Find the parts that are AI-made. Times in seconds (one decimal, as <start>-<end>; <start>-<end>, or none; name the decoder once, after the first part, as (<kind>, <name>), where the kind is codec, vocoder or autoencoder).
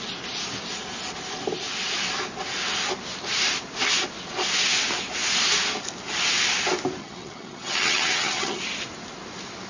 7.0-8.6 (vocoder, HiFi-GAN)